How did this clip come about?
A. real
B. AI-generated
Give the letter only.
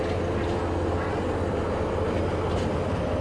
A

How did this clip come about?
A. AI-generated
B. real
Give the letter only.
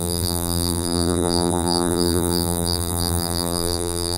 A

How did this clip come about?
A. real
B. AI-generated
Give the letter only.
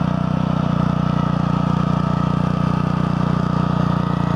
A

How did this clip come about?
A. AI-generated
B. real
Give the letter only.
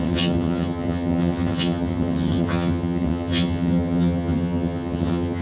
A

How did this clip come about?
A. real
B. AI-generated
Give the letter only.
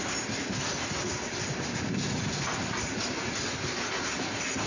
A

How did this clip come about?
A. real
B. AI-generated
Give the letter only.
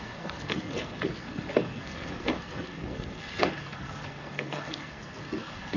B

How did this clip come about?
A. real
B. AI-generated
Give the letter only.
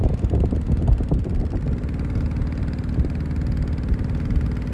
A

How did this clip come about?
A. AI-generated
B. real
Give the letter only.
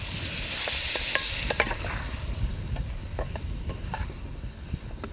B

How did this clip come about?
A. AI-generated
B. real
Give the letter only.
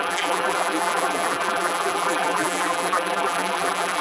A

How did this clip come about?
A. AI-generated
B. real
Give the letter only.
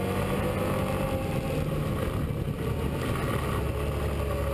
B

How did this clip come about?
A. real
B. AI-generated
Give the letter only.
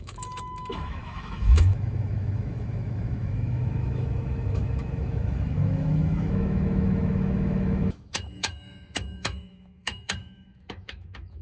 B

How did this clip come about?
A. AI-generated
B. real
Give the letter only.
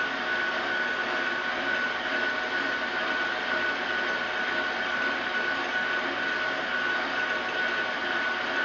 B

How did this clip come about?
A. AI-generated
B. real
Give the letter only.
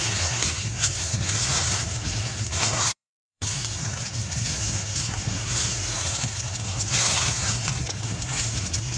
A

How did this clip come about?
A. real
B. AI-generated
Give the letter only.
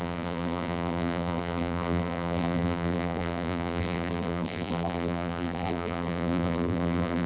B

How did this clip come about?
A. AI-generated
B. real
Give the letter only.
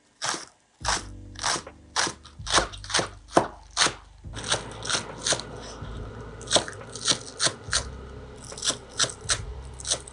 B